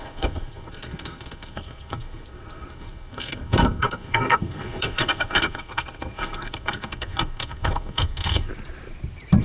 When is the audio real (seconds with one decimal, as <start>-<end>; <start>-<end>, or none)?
8.5-9.4